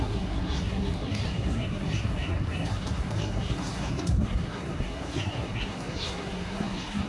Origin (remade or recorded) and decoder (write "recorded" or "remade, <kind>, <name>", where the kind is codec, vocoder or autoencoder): remade, codec, SNAC